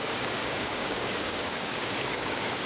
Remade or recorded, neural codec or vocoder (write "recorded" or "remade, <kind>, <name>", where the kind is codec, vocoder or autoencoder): remade, codec, DAC